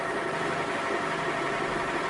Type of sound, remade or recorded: recorded